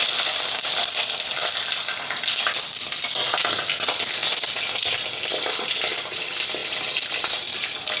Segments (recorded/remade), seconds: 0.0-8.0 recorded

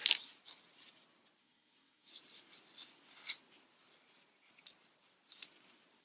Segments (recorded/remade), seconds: 0.0-1.4 recorded; 1.4-2.1 remade; 2.1-6.0 recorded

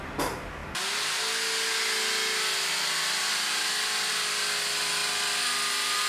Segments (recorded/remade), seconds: 0.0-6.1 recorded